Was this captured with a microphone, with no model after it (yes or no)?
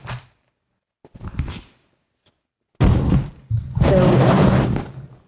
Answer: yes